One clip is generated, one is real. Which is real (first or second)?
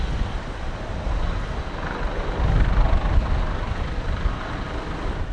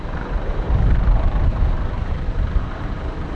first